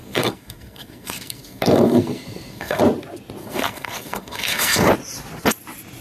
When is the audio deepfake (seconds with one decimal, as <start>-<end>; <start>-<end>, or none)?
0.0-2.8; 3.4-4.9